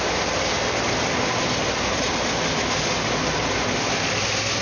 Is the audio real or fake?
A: real